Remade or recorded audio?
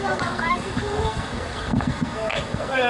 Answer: remade